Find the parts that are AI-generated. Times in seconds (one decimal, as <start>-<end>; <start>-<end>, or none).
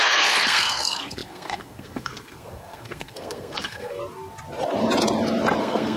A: 0.0-4.0; 5.6-6.0